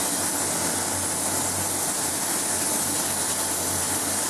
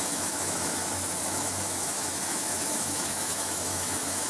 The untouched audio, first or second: first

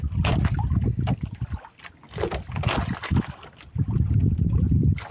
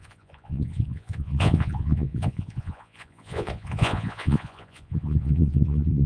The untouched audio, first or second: first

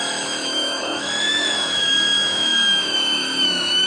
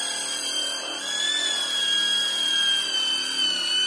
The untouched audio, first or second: second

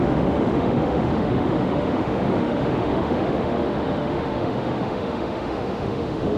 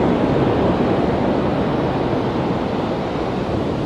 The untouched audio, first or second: second